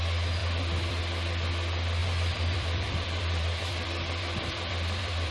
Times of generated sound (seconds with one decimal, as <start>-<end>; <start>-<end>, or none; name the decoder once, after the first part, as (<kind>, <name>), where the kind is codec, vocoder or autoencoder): 0.4-1.0 (vocoder, BigVGAN v2); 2.0-5.3